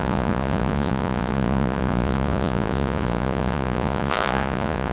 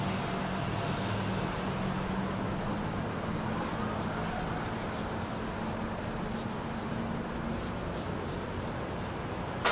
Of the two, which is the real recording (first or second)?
second